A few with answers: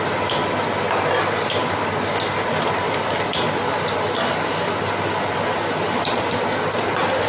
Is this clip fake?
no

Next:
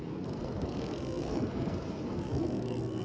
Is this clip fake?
yes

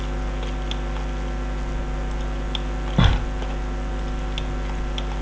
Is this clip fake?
no